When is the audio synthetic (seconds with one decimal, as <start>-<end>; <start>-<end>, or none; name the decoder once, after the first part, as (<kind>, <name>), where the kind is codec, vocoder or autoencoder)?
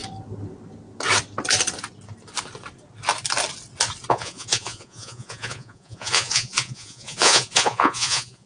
4.1-8.5 (vocoder, Vocos)